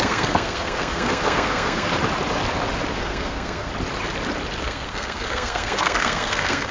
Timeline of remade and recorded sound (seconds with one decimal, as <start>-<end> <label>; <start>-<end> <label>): 0.0-1.9 remade; 1.9-2.9 recorded; 2.9-3.7 remade; 3.7-4.6 recorded; 4.6-6.7 remade